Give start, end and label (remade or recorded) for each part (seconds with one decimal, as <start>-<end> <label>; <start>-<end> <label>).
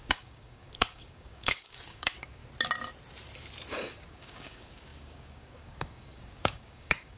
0.0-2.4 remade; 2.4-3.7 recorded; 3.7-7.2 remade